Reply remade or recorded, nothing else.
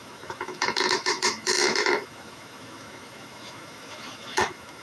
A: remade